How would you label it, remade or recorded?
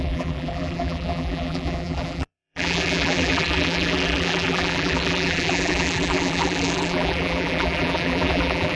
remade